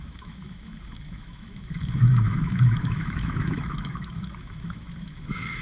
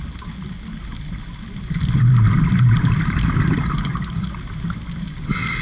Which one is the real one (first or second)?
second